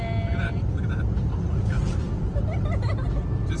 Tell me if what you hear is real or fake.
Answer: real